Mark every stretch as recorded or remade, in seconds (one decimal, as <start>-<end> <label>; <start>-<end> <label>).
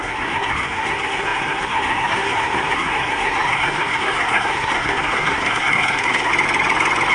0.0-6.3 remade; 6.3-7.1 recorded